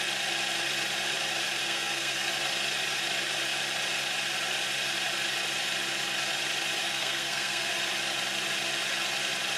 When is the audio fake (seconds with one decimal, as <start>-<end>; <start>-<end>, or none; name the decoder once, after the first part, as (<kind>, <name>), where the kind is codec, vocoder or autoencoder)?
1.6-2.3 (codec, SNAC); 6.8-7.7

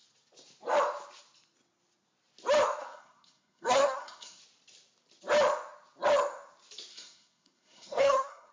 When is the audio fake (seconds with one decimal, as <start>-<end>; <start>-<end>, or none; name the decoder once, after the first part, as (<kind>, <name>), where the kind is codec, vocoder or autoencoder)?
2.8-4.4 (codec, SNAC); 6.9-8.5

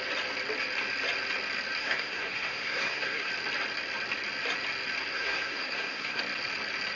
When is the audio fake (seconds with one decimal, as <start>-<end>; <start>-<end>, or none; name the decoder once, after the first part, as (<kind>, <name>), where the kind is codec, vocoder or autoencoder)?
1.8-3.3 (codec, SNAC); 5.1-6.2

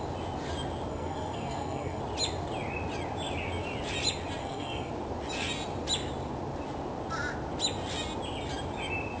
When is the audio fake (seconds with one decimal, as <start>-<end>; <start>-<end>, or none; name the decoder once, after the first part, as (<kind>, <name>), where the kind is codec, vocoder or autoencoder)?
0.9-2.0 (codec, SNAC); 4.4-4.9

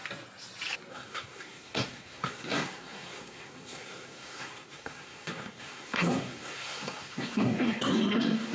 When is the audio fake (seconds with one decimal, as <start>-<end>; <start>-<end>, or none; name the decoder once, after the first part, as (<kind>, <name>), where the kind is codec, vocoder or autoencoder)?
0.9-8.5 (codec, SNAC)

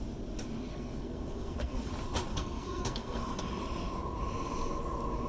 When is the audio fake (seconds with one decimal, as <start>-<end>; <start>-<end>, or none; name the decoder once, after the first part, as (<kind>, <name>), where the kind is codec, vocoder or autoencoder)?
0.7-1.9 (codec, SNAC); 2.3-3.4

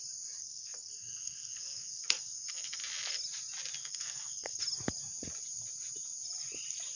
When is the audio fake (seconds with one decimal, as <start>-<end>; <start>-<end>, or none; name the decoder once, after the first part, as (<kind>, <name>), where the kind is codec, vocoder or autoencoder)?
0.4-2.8 (codec, SNAC); 3.8-4.6